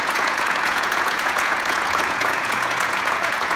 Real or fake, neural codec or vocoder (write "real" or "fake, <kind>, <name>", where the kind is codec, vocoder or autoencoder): fake, vocoder, Vocos